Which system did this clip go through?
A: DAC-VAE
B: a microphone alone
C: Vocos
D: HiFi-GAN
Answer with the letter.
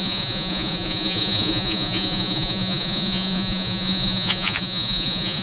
C